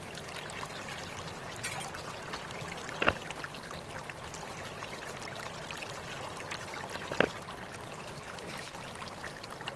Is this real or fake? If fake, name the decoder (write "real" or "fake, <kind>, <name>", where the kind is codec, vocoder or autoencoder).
real